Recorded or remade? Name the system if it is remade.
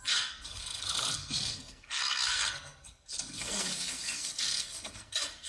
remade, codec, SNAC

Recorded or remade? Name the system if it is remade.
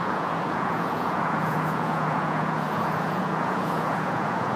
remade, vocoder, Vocos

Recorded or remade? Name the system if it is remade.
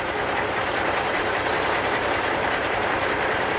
remade, vocoder, BigVGAN v2